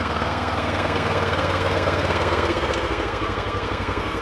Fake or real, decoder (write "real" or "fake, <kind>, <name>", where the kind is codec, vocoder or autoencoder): fake, codec, SNAC